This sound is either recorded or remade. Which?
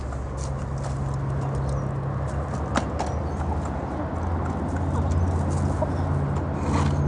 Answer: recorded